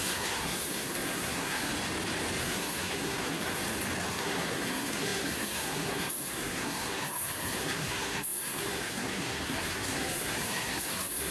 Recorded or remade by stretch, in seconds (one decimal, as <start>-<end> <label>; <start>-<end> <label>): 0.0-1.7 remade; 1.7-2.4 recorded; 2.4-3.6 remade; 3.6-4.1 recorded; 4.1-11.3 remade